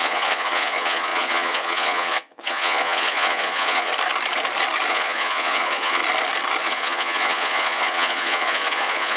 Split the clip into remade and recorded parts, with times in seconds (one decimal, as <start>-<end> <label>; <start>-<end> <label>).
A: 0.0-3.9 remade; 3.9-4.9 recorded; 4.9-6.0 remade; 6.0-6.6 recorded; 6.6-9.2 remade